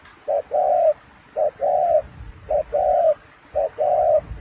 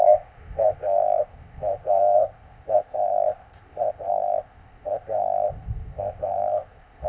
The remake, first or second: second